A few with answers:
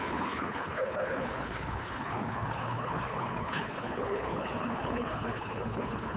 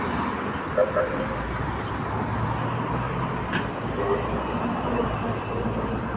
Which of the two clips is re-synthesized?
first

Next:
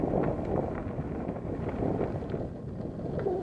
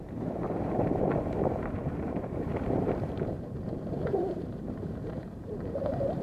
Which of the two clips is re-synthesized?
second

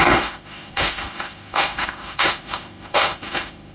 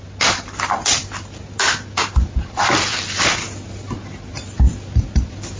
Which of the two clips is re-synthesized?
first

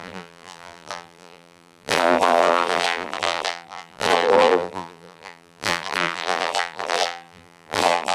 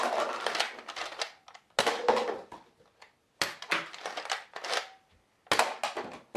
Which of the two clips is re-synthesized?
first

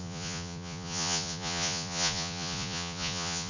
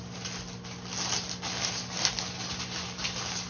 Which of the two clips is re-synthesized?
first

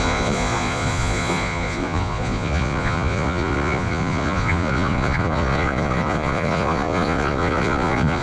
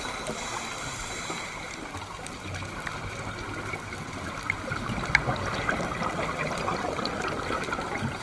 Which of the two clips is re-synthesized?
first